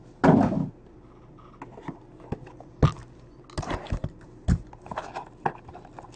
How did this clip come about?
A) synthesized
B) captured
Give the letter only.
B